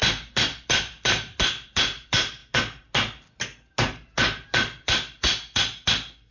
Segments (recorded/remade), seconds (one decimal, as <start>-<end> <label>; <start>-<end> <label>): 0.0-2.4 remade; 2.4-6.3 recorded